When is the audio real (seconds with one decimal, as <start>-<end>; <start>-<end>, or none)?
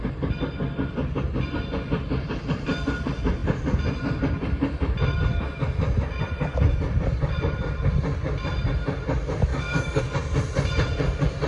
0.0-9.5; 10.0-11.5